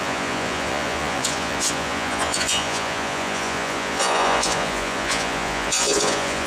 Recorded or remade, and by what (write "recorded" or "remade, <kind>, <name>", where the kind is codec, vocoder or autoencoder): remade, vocoder, Vocos